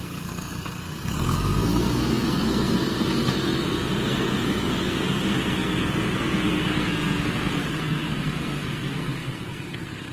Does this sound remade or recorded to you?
remade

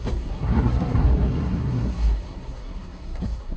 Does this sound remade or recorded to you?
remade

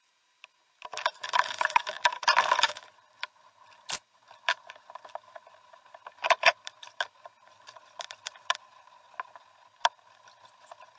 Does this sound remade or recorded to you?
recorded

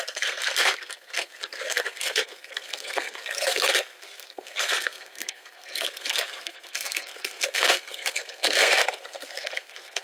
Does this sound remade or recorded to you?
remade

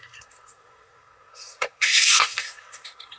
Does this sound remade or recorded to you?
remade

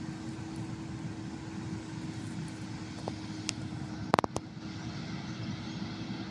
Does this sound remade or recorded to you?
recorded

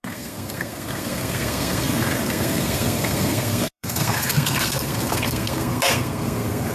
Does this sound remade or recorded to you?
remade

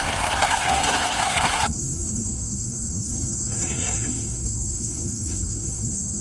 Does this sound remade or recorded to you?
remade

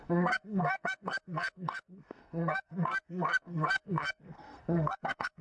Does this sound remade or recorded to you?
remade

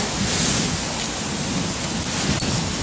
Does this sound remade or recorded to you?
recorded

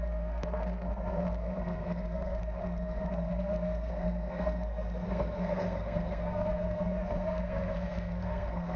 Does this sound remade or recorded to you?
remade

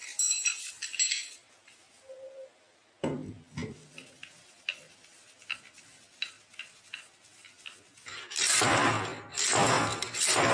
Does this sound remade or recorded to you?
recorded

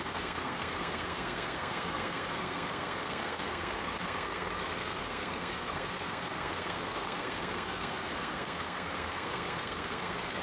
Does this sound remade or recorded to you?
remade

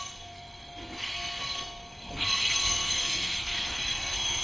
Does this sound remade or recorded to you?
remade